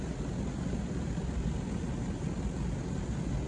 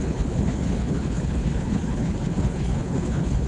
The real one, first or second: first